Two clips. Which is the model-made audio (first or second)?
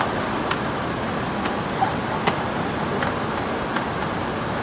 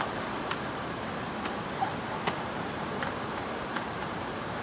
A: second